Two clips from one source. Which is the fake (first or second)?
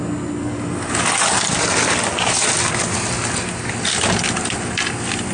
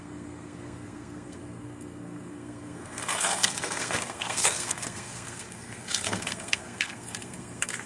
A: second